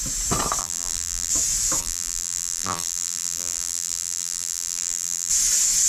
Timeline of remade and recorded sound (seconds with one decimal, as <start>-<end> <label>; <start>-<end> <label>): 0.0-0.6 recorded; 0.6-1.3 remade; 1.3-1.8 recorded; 1.8-5.3 remade; 5.3-5.9 recorded